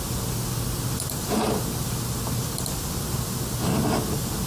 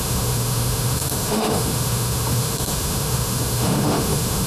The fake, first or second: second